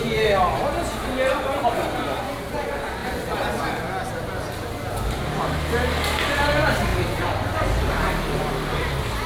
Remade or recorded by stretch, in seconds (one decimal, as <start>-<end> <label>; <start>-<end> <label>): 0.0-9.3 recorded